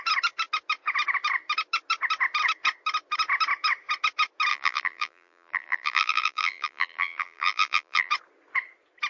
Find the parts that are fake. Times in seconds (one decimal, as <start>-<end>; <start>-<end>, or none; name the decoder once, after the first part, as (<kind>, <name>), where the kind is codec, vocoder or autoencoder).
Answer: 4.5-8.1 (vocoder, BigVGAN v2)